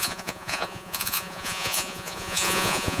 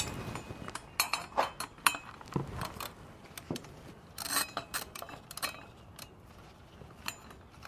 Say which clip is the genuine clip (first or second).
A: second